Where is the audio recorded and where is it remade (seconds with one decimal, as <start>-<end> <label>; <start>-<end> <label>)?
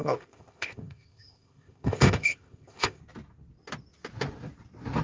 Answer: 0.0-3.0 remade; 3.0-5.0 recorded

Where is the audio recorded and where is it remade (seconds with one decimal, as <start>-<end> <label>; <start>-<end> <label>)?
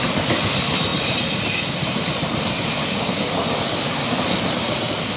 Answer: 0.0-5.2 recorded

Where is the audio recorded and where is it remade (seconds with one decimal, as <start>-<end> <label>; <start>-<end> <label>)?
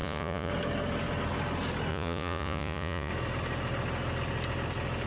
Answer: 0.0-0.5 remade; 0.5-1.9 recorded; 1.9-3.1 remade; 3.1-5.1 recorded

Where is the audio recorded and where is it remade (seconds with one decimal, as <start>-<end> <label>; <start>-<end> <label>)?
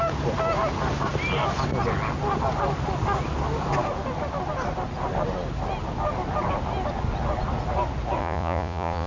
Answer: 0.0-8.2 recorded; 8.2-9.1 remade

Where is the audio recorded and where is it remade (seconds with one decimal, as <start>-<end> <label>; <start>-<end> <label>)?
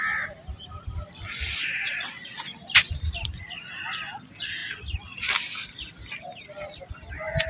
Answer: 0.0-7.5 recorded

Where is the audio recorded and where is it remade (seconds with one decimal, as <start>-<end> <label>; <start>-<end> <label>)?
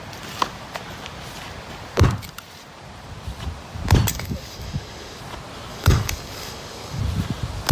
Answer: 0.0-4.1 recorded; 4.1-5.2 remade; 5.2-5.7 recorded; 5.7-7.0 remade; 7.0-7.7 recorded